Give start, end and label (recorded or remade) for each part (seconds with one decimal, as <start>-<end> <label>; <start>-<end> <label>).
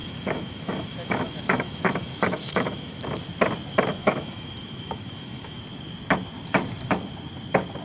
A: 0.0-3.2 remade; 3.2-3.9 recorded; 3.9-5.6 remade; 5.6-7.8 recorded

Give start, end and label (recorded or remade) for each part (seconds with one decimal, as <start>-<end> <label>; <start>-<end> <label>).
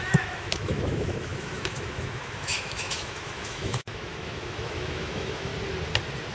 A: 0.0-5.5 remade; 5.5-6.3 recorded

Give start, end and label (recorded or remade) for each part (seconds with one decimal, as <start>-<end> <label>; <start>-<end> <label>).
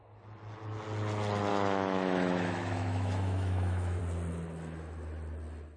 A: 0.0-1.5 recorded; 1.5-4.0 remade; 4.0-5.8 recorded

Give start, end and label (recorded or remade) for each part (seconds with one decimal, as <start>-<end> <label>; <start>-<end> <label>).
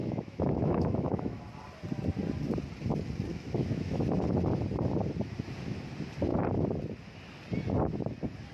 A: 0.0-1.4 remade; 1.4-3.3 recorded; 3.3-4.0 remade; 4.0-8.5 recorded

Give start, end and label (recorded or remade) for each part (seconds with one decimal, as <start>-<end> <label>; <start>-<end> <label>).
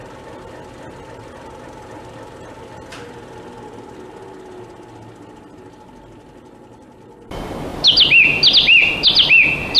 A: 0.0-9.8 recorded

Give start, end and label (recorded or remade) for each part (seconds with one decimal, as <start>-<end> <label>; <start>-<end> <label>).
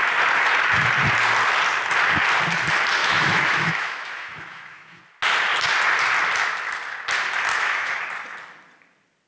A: 0.0-3.0 recorded; 3.0-5.0 remade; 5.0-7.5 recorded; 7.5-8.0 remade; 8.0-9.3 recorded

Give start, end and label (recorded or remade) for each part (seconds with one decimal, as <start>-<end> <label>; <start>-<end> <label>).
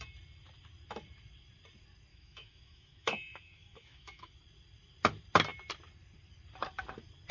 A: 0.0-2.1 recorded; 2.1-4.3 remade; 4.3-7.3 recorded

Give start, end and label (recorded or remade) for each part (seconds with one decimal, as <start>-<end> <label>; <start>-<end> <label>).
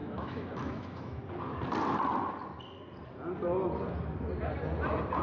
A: 0.0-1.2 remade; 1.2-5.2 recorded